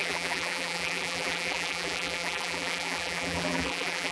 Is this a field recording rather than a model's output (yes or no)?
no